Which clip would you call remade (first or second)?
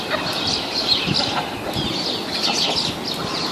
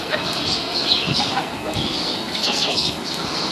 second